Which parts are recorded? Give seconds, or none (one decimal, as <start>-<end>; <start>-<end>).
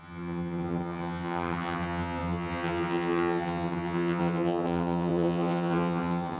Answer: none